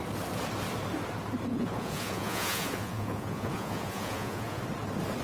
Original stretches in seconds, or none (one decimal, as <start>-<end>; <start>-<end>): 0.0-1.5; 4.6-5.2